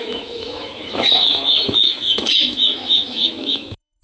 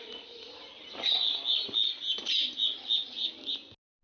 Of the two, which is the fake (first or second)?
first